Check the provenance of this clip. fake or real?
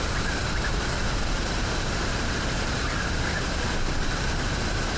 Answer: real